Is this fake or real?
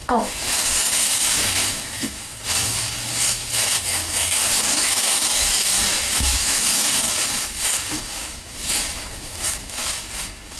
fake